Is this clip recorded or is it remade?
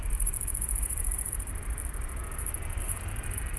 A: remade